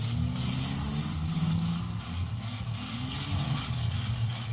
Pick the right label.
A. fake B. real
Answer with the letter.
B